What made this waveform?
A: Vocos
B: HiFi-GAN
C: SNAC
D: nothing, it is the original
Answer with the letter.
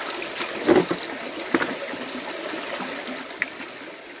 D